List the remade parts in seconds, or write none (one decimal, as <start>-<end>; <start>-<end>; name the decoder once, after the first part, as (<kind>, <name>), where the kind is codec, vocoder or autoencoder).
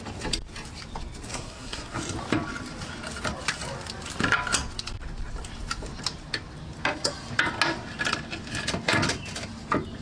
1.3-2.0 (codec, SNAC)